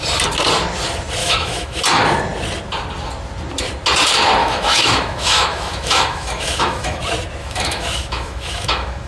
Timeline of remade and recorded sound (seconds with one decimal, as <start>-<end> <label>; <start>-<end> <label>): 0.0-1.2 recorded; 1.2-1.8 remade; 1.8-4.4 recorded; 4.4-7.0 remade; 7.0-7.4 recorded; 7.4-9.1 remade